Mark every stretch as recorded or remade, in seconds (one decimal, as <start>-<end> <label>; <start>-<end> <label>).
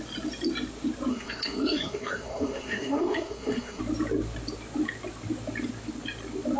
0.0-1.1 recorded; 1.1-3.8 remade; 3.8-6.6 recorded